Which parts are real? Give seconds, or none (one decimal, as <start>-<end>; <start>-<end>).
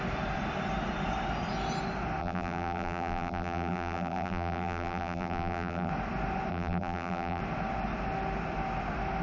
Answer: 0.0-2.2; 5.9-6.5; 7.4-9.2